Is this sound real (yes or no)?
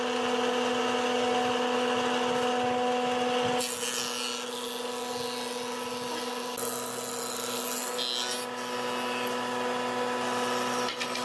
yes